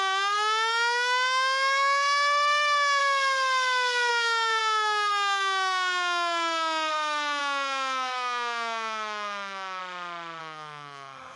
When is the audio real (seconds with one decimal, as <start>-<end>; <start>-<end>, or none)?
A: 3.0-4.1; 9.8-10.4